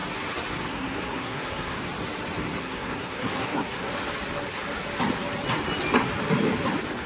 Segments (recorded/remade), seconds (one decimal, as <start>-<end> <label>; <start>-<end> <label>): 0.0-0.7 recorded; 0.7-1.8 remade; 1.8-2.6 recorded; 2.6-3.9 remade; 3.9-7.1 recorded